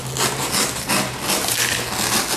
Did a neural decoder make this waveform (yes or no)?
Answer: no